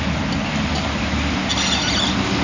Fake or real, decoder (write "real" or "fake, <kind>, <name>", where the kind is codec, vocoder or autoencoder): real